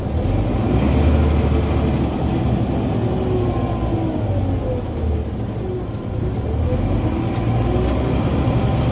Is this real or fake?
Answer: real